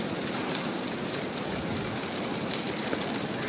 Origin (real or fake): real